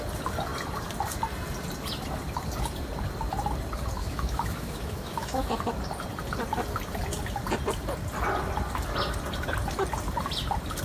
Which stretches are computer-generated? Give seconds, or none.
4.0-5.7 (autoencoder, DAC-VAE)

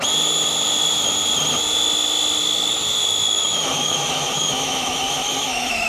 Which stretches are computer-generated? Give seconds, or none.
2.4-5.9 (autoencoder, DAC-VAE)

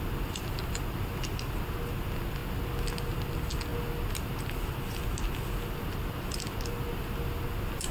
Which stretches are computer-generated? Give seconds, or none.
none

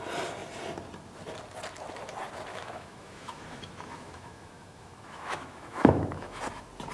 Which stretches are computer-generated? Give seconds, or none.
2.5-6.4 (autoencoder, DAC-VAE)